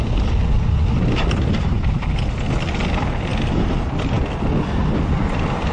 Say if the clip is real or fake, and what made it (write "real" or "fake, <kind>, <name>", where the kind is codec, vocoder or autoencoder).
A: real